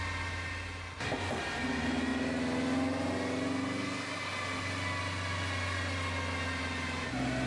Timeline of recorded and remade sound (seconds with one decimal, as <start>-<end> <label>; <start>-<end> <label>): 0.0-7.5 recorded